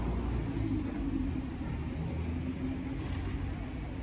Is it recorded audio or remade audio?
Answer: recorded